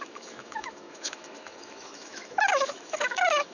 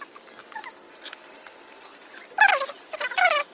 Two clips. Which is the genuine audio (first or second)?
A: second